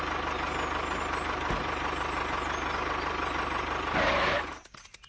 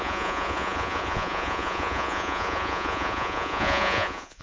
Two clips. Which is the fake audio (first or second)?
second